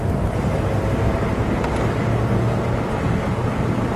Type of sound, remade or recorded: recorded